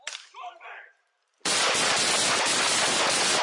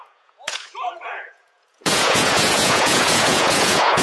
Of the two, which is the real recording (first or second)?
first